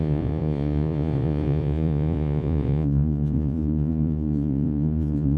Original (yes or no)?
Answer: no